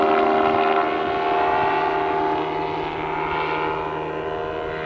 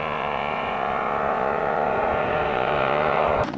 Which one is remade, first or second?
second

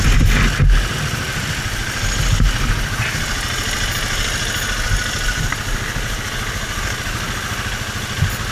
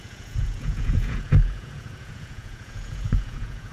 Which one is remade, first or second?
second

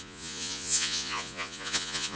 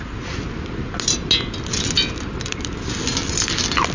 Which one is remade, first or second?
first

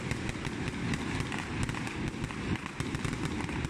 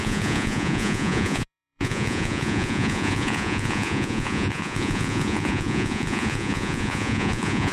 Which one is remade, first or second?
second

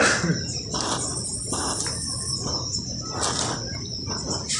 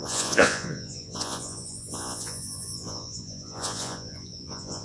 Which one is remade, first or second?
second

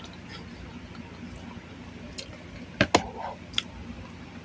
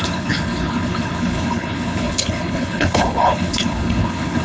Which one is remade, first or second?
second